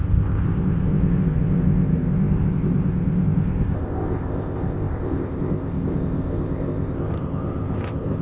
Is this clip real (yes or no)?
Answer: no